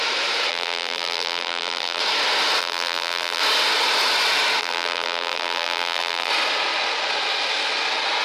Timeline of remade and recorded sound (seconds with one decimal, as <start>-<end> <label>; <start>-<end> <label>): 0.0-0.5 recorded; 0.5-2.0 remade; 2.0-2.6 recorded; 2.6-3.4 remade; 3.4-4.6 recorded; 4.6-6.3 remade; 6.3-8.2 recorded